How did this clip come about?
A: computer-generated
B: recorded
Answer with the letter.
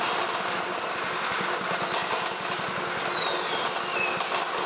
B